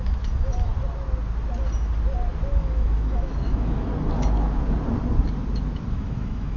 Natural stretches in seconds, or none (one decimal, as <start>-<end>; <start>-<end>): 0.7-2.5; 3.9-5.9